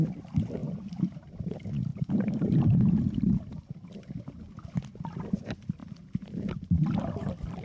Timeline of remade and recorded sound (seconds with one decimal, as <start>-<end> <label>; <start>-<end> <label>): 0.0-0.6 recorded; 0.6-1.4 remade; 1.4-1.9 recorded; 1.9-3.4 remade; 3.4-7.6 recorded